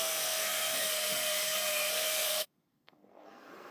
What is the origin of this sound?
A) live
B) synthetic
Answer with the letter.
B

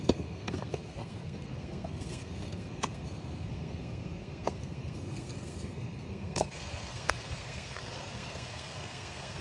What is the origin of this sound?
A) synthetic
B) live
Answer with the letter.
A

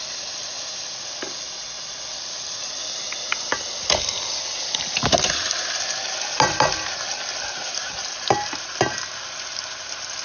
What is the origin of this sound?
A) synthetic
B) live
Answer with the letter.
B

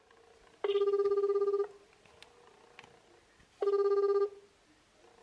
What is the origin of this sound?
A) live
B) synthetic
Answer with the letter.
A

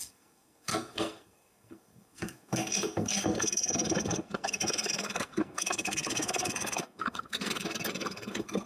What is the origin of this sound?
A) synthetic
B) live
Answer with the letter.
A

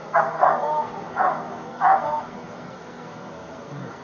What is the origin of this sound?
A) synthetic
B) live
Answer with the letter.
A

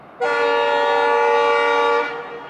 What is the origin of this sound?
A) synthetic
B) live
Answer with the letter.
B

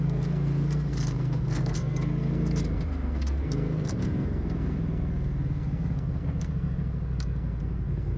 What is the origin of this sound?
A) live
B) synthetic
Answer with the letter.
B